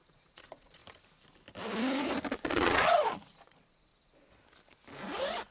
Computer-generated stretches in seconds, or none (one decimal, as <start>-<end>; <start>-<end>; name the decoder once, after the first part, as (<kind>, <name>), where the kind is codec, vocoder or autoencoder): 0.0-0.8 (vocoder, Vocos); 2.3-3.9